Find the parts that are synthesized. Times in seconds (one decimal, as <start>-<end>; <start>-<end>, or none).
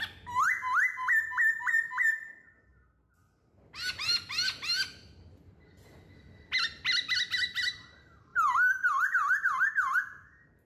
8.3-9.7